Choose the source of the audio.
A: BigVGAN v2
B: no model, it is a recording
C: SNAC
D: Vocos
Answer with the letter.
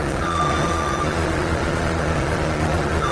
D